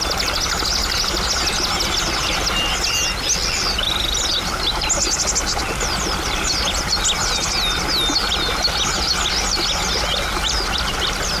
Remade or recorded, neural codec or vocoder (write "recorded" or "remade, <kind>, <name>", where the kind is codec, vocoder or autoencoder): recorded